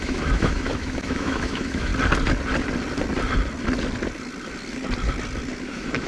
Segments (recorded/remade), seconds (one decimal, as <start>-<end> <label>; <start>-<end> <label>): 0.0-1.9 remade; 1.9-5.6 recorded; 5.6-6.1 remade